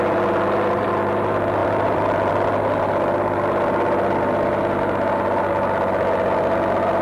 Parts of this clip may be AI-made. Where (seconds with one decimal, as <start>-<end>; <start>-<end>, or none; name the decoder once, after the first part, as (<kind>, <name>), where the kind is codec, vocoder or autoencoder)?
1.6-2.3 (vocoder, BigVGAN v2)